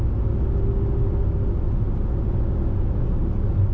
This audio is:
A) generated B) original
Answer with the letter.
B